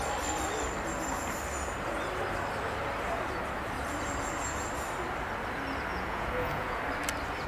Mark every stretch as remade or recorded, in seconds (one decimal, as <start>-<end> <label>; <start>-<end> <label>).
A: 0.0-5.9 recorded; 5.9-6.8 remade; 6.8-7.5 recorded